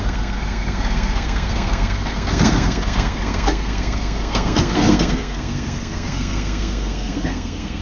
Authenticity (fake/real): fake